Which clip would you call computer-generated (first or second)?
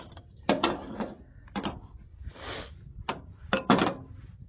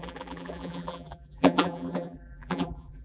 second